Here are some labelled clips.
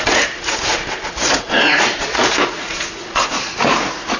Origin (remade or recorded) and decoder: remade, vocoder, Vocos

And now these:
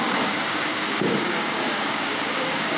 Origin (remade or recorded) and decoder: remade, codec, DAC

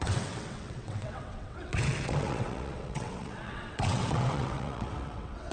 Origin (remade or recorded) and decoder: remade, vocoder, WaveNeXt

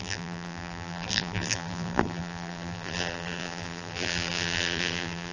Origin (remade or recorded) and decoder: remade, vocoder, BigVGAN v2